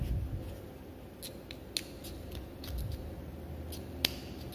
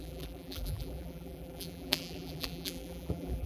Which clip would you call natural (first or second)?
first